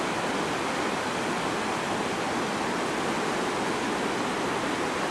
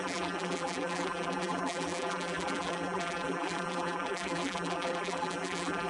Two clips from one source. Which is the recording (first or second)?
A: first